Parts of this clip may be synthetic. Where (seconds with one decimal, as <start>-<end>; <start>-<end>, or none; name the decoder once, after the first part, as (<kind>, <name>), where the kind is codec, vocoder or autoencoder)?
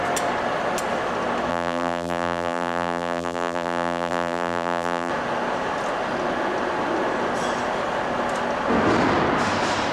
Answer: 1.5-5.1 (vocoder, BigVGAN v2)